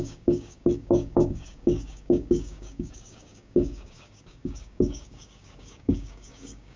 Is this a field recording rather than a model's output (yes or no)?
no